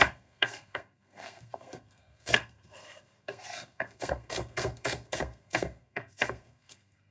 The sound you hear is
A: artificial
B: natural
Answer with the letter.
A